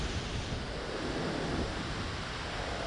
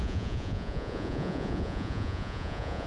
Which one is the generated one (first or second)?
second